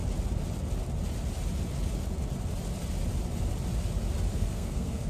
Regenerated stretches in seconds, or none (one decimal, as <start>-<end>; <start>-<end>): 4.3-5.1